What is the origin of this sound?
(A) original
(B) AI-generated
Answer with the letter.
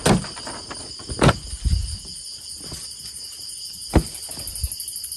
A